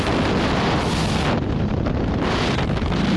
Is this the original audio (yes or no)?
yes